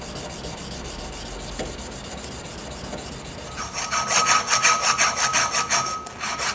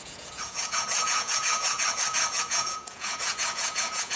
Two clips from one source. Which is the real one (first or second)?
first